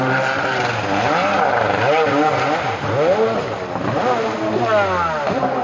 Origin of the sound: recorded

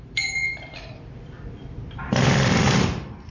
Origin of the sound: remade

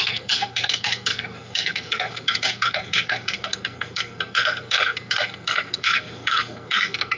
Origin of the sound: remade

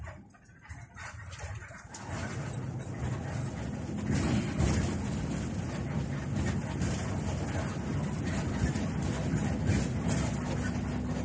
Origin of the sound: recorded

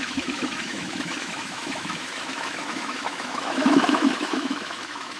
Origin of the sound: remade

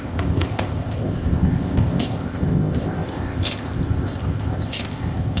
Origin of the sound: remade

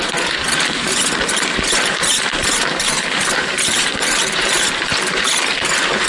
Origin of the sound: remade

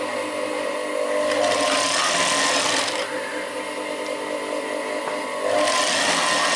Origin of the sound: recorded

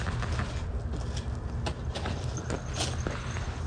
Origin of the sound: recorded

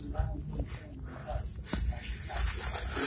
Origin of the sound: recorded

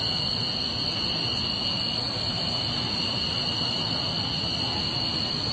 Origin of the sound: recorded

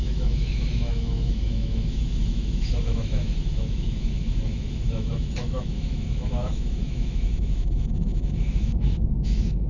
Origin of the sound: remade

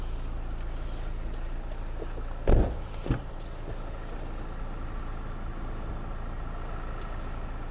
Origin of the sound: recorded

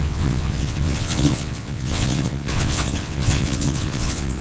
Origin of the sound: remade